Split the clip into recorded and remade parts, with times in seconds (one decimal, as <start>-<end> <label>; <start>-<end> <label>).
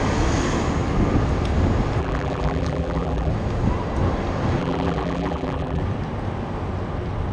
0.0-2.0 recorded; 2.0-3.3 remade; 3.3-4.6 recorded; 4.6-5.8 remade; 5.8-7.3 recorded